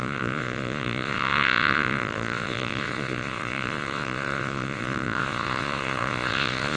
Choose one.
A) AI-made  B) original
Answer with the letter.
A